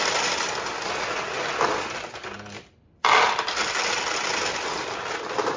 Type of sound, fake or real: real